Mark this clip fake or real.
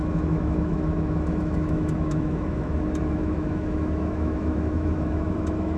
fake